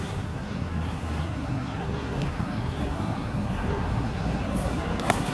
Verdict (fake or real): fake